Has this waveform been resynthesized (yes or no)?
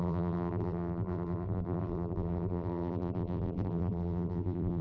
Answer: yes